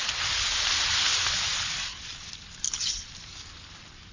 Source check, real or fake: real